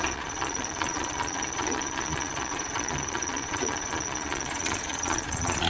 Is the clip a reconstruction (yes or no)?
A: yes